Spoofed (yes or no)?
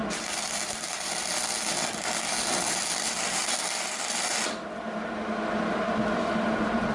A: yes